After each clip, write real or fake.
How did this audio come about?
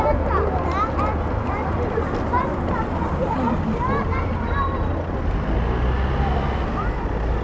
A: real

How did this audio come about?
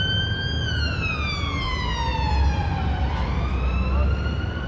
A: real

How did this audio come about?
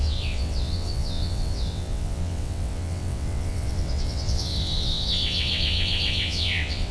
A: fake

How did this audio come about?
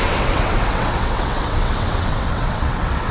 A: fake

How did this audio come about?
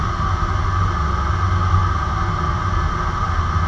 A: real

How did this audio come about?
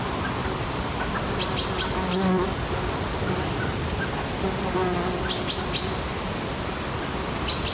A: real